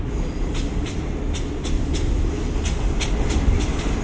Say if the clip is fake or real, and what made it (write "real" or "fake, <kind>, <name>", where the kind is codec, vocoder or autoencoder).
real